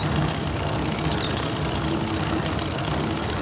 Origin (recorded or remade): recorded